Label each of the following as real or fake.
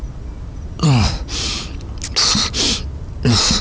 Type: real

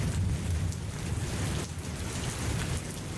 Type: real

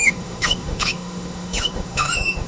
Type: fake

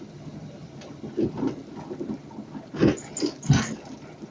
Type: real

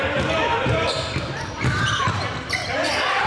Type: fake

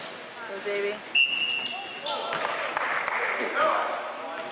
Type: real